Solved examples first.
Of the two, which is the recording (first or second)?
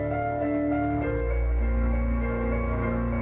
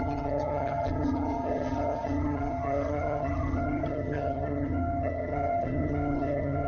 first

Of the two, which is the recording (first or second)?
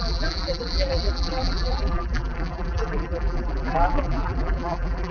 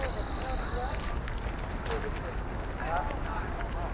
second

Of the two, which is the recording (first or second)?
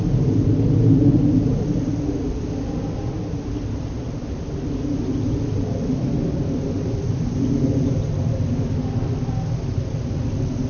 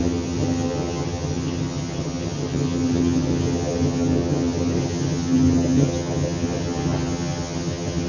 first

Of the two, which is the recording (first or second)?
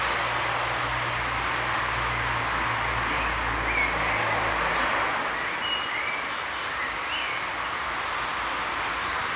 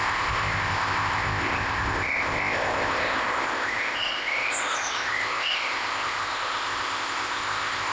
first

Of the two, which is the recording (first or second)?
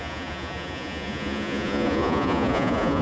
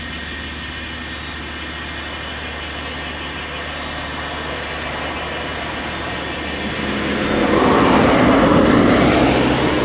second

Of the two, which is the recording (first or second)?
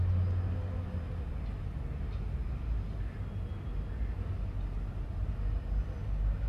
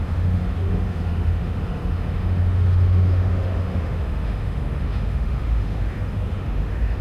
first